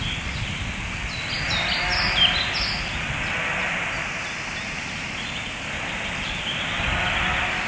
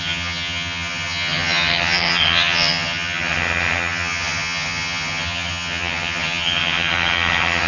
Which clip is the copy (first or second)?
second